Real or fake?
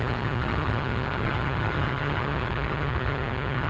fake